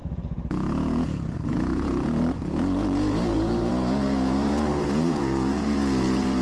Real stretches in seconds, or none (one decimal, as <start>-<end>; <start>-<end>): none